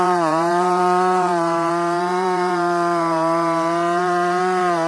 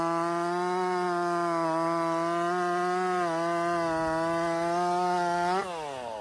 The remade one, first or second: first